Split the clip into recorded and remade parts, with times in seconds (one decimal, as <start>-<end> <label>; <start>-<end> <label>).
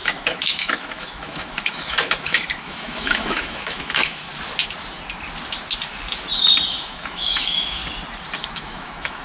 0.0-4.3 remade; 4.3-6.7 recorded; 6.7-7.8 remade; 7.8-8.4 recorded; 8.4-9.2 remade